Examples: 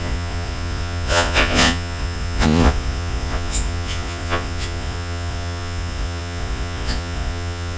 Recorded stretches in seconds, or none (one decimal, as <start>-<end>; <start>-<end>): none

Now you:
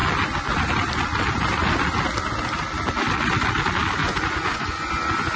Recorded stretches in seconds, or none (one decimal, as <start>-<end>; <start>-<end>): 0.0-4.0; 4.9-5.4

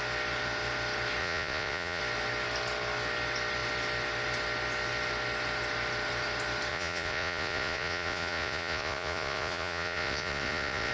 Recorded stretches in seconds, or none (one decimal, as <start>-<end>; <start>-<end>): 0.0-1.2; 2.0-6.7

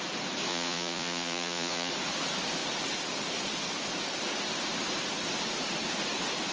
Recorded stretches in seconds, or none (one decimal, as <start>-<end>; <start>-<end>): 0.0-0.5; 1.9-6.5